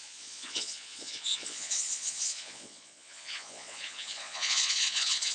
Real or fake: fake